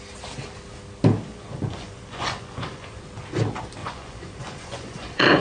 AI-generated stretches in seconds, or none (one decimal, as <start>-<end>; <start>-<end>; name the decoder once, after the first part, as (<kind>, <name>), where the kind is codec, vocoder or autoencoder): 1.3-3.0 (vocoder, Vocos); 3.8-5.4